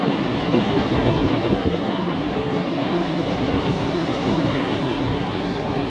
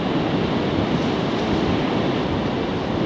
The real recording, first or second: second